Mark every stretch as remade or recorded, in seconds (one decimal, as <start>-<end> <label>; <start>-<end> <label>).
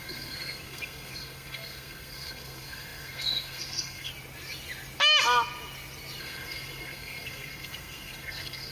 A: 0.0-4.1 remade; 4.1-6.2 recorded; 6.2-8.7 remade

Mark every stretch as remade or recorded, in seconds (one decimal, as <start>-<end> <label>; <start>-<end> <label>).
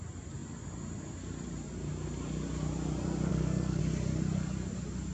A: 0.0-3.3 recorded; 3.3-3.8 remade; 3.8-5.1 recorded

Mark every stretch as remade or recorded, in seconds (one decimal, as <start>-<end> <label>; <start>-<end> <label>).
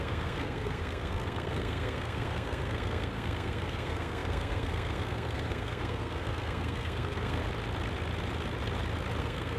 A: 0.0-7.4 remade; 7.4-9.2 recorded; 9.2-9.6 remade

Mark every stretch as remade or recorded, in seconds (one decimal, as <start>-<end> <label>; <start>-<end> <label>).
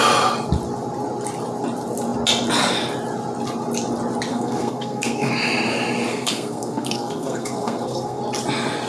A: 0.0-4.3 recorded; 4.3-5.3 remade; 5.3-6.1 recorded; 6.1-8.2 remade; 8.2-8.9 recorded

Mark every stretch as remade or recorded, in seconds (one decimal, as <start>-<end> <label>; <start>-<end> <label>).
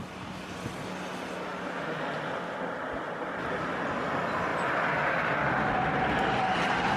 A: 0.0-7.0 recorded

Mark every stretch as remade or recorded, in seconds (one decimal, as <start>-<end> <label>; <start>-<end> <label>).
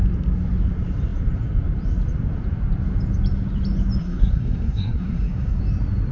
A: 0.0-4.0 recorded; 4.0-5.6 remade; 5.6-6.1 recorded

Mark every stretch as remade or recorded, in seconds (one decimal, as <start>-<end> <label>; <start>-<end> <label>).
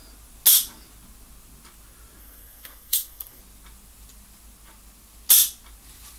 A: 0.0-2.2 recorded; 2.2-3.4 remade; 3.4-6.2 recorded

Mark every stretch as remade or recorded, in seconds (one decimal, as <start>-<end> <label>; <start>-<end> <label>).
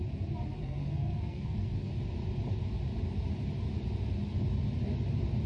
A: 0.0-0.6 recorded; 0.6-1.9 remade; 1.9-5.5 recorded